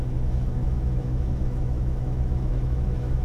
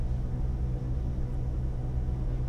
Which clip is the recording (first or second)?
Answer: second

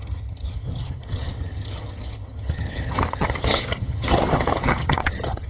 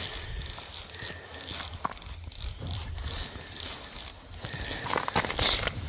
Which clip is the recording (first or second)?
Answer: second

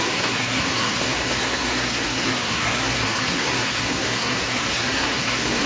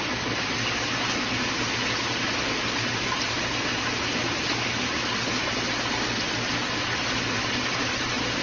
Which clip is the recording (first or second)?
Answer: second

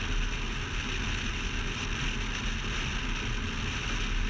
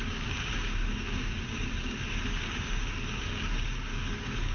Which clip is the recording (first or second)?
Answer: first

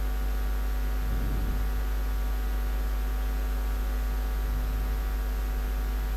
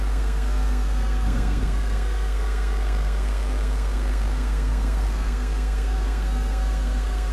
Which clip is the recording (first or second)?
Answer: first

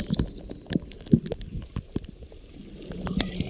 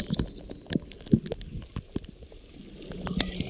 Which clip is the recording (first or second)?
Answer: second